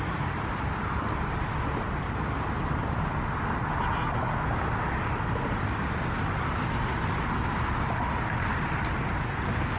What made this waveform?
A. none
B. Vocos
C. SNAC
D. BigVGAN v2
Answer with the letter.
A